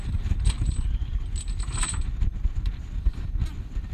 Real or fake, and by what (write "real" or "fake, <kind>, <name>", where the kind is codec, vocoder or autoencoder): real